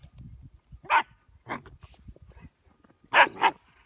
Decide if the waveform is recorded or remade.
recorded